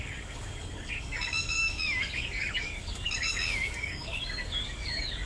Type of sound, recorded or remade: remade